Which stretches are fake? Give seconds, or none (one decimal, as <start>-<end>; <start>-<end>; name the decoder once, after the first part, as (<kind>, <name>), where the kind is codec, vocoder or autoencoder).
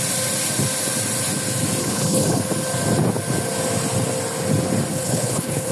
1.8-2.4 (codec, HILCodec); 4.9-5.7